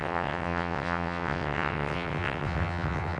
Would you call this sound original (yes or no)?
no